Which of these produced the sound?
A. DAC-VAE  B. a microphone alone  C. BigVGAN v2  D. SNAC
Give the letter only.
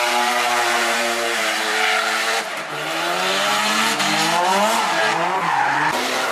C